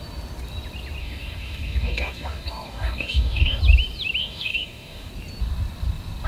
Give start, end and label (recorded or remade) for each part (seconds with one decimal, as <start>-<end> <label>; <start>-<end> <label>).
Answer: 0.0-1.0 recorded; 1.0-3.6 remade; 3.6-4.2 recorded; 4.2-5.1 remade; 5.1-6.3 recorded